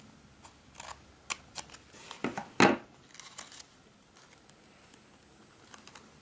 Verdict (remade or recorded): recorded